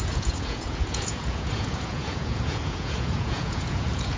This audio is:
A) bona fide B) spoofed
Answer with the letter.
B